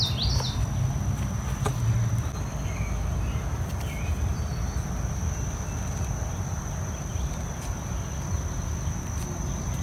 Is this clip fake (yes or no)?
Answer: no